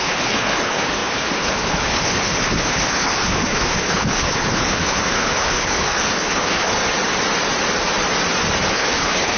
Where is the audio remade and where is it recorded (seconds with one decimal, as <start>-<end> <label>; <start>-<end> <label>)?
0.0-6.8 remade; 6.8-8.7 recorded; 8.7-9.4 remade